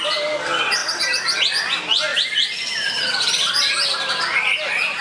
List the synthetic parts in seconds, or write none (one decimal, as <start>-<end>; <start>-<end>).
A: none